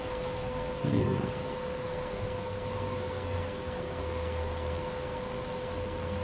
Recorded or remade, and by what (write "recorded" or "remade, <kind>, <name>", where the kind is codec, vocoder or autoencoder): remade, codec, SNAC